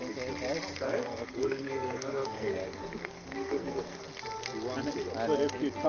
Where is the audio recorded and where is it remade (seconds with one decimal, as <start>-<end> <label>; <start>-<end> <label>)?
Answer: 0.0-0.7 recorded; 0.7-4.0 remade; 4.0-5.9 recorded